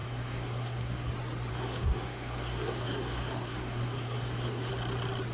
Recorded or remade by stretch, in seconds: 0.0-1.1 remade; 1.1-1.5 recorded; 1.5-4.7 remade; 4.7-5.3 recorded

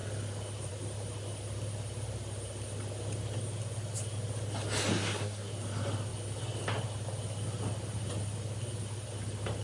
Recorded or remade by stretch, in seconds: 0.0-4.9 recorded; 4.9-5.5 remade; 5.5-9.6 recorded

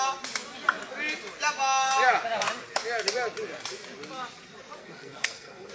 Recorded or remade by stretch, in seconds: 0.0-4.8 recorded; 4.8-5.7 remade

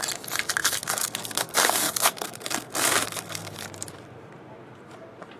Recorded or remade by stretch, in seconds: 0.0-0.6 recorded; 0.6-3.5 remade; 3.5-5.4 recorded

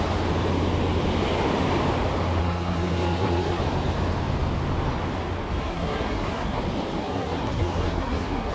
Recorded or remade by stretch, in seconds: 0.0-2.4 recorded; 2.4-3.6 remade; 3.6-5.6 recorded; 5.6-6.6 remade; 6.6-7.0 recorded; 7.0-8.5 remade

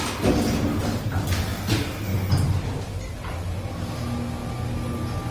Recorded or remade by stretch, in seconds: 0.0-5.3 recorded

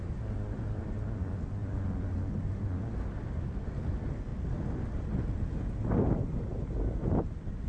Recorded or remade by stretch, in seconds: 0.0-7.7 recorded